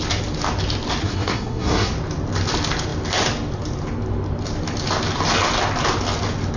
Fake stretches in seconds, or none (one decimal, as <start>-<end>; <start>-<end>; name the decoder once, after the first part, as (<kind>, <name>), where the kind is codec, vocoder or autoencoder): 1.0-1.9 (codec, SNAC)